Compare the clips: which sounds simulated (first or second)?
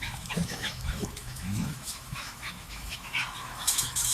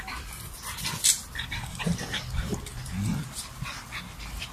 first